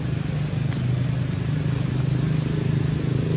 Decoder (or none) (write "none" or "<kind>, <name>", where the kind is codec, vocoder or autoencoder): none